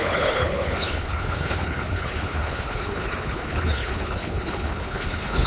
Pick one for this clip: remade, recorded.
remade